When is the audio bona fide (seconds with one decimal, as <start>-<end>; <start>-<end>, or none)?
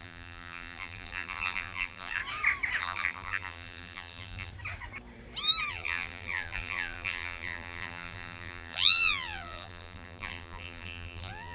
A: 2.2-2.8; 4.5-5.7